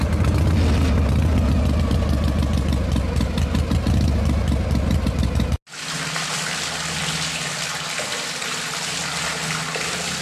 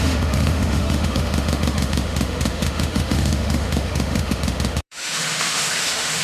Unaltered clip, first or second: first